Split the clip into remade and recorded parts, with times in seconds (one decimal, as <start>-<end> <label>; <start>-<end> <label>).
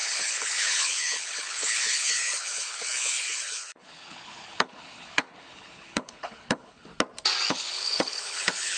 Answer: 0.0-6.9 remade; 6.9-7.5 recorded; 7.5-8.8 remade